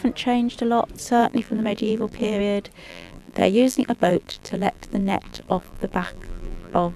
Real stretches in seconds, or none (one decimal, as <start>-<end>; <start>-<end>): 0.0-1.2; 2.4-2.9